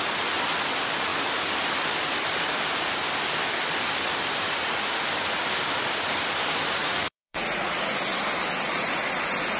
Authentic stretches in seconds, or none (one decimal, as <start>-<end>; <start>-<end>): 0.0-6.8; 7.8-9.6